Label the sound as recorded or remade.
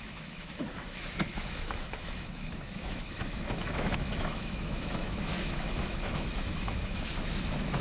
remade